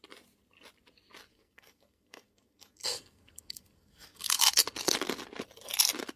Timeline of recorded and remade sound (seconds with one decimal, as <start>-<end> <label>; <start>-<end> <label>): 0.0-1.3 recorded; 1.3-4.5 remade; 4.5-6.2 recorded

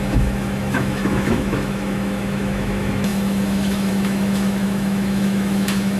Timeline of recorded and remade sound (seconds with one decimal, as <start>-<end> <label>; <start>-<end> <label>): 0.0-6.0 remade

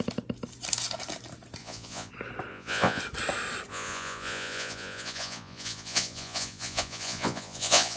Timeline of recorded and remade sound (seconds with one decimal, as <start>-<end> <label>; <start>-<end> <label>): 0.0-1.6 recorded; 1.6-2.1 remade; 2.1-2.5 recorded; 2.5-3.0 remade; 3.0-3.7 recorded; 3.7-8.0 remade

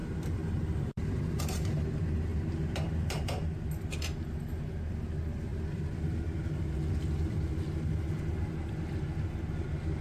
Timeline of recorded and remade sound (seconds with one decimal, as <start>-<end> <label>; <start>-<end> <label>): 0.0-1.4 remade; 1.4-5.5 recorded; 5.5-7.6 remade; 7.6-10.0 recorded